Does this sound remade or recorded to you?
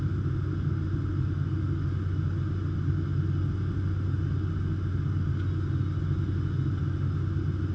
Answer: recorded